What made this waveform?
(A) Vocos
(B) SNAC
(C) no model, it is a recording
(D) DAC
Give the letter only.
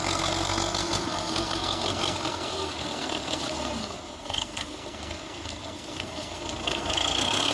B